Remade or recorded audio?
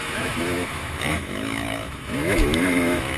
remade